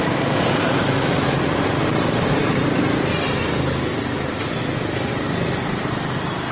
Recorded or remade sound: remade